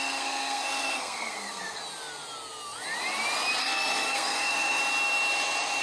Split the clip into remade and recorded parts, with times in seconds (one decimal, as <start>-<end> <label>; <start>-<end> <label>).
0.0-1.8 remade; 1.8-3.6 recorded; 3.6-4.8 remade; 4.8-5.8 recorded